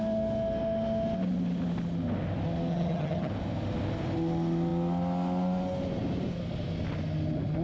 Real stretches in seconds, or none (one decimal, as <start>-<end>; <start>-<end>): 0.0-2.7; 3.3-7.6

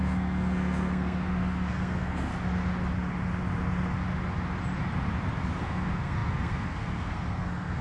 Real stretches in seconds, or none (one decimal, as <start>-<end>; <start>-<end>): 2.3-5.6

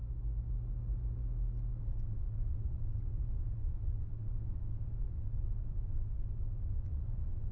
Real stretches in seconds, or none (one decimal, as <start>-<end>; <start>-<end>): 0.0-1.8